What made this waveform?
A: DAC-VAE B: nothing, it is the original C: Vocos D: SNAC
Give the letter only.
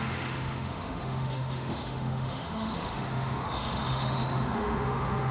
A